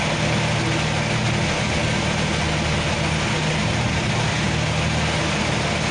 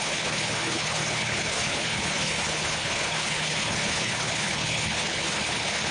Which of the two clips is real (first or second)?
first